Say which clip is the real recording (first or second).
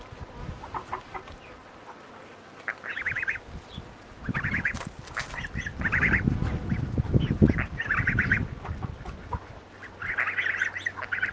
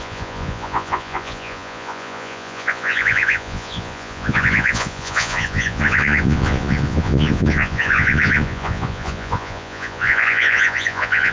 first